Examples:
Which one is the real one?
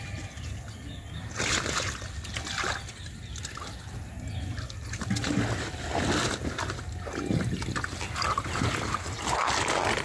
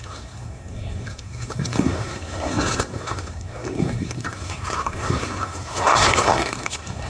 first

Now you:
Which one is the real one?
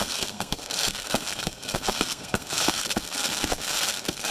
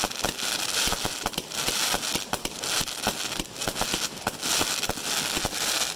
second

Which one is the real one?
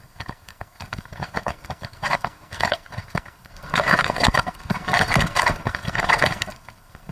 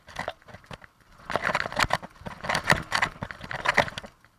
second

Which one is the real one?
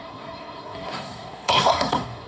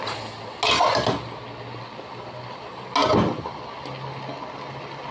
second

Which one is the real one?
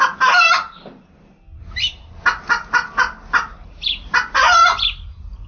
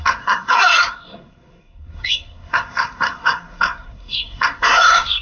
first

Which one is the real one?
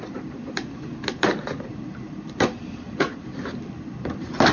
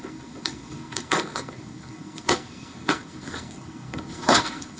first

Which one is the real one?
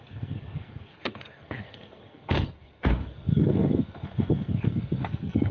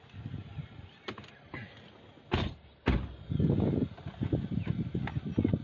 second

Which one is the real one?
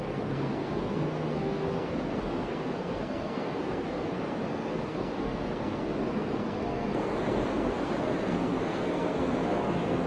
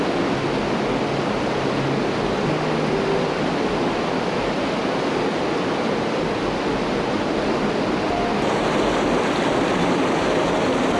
second